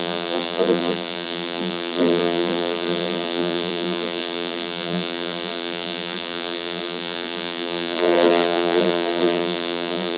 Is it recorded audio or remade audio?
remade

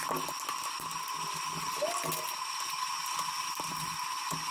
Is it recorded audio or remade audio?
recorded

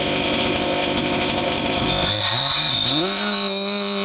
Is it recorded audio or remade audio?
remade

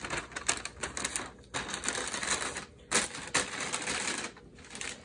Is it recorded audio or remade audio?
recorded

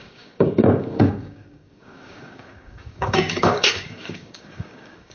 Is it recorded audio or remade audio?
remade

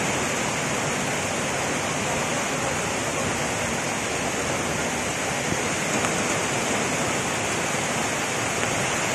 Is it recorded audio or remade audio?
recorded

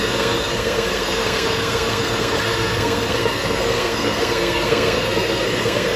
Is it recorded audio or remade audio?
remade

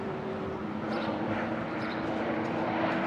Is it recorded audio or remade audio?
remade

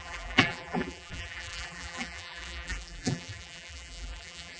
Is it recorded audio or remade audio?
remade